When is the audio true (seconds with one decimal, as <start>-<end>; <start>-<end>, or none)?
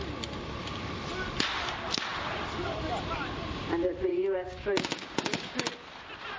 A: 0.0-4.1; 5.7-6.4